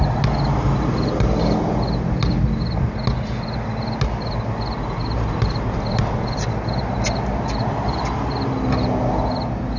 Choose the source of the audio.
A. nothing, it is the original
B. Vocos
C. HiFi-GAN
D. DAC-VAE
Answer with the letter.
A